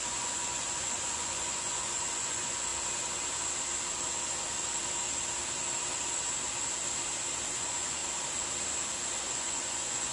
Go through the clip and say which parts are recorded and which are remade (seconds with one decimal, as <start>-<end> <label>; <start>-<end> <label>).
0.0-2.7 remade; 2.7-7.5 recorded; 7.5-8.0 remade; 8.0-9.2 recorded; 9.2-10.1 remade